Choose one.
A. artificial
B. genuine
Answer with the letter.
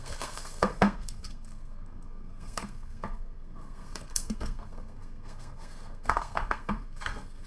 A